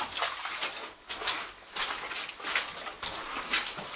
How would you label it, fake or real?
real